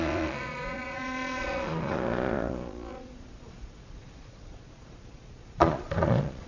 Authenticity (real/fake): fake